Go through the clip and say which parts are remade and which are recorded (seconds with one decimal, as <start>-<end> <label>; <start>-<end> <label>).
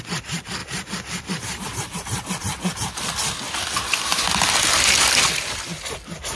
0.0-6.4 recorded